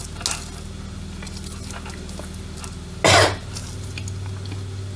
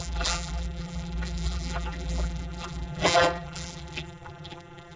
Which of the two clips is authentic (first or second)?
first